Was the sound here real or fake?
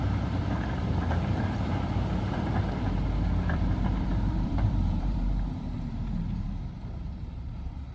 fake